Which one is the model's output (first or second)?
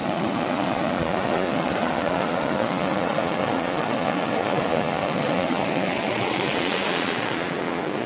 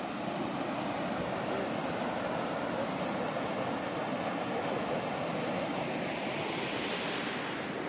first